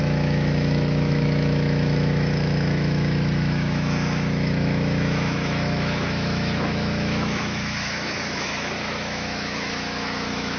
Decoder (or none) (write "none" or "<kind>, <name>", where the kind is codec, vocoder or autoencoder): autoencoder, DAC-VAE